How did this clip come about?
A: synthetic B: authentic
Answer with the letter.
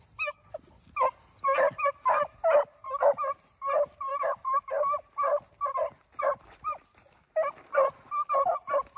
B